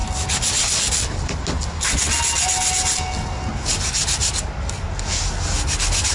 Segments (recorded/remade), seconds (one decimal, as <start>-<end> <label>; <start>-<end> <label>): 0.0-6.1 recorded